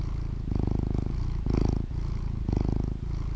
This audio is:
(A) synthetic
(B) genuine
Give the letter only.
B